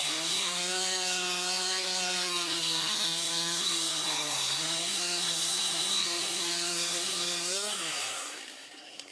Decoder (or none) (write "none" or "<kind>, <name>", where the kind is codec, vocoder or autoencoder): codec, SNAC